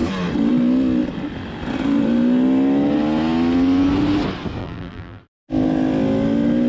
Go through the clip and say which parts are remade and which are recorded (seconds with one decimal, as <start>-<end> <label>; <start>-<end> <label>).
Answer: 0.0-4.6 recorded; 4.6-5.2 remade; 5.2-6.7 recorded

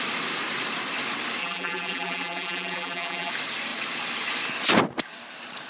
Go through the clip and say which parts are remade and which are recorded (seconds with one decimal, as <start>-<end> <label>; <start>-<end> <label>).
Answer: 0.0-1.4 recorded; 1.4-3.3 remade; 3.3-5.7 recorded

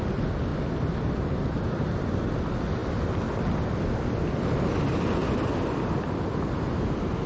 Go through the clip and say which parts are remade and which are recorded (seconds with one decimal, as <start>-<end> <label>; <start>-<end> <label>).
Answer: 0.0-7.3 recorded